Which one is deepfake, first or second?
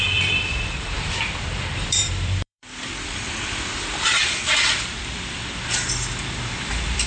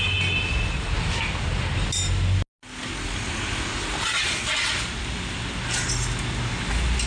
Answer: first